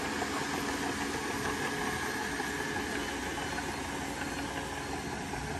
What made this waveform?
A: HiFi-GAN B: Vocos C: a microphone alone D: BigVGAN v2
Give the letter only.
C